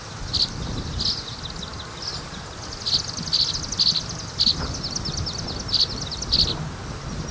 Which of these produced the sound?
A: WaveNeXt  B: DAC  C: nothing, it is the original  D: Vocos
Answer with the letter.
C